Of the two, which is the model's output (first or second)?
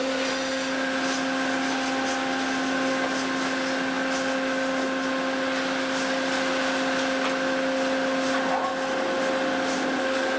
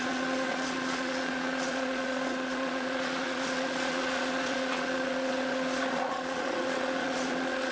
second